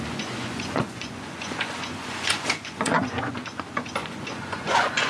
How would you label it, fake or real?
fake